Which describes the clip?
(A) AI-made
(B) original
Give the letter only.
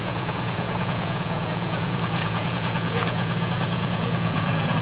A